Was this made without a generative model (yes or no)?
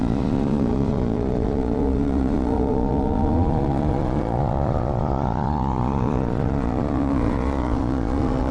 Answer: no